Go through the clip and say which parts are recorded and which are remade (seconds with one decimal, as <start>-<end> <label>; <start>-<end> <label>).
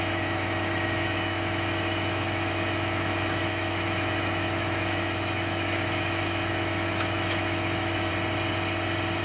0.0-8.1 remade; 8.1-9.2 recorded